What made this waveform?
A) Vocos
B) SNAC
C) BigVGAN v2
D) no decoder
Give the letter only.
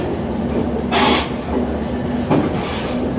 D